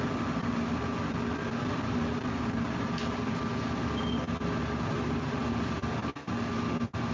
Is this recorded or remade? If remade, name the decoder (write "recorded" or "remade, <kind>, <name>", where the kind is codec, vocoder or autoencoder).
recorded